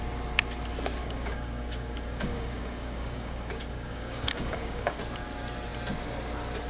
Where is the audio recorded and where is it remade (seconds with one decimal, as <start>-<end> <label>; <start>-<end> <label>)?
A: 0.0-1.0 recorded; 1.0-5.0 remade; 5.0-6.7 recorded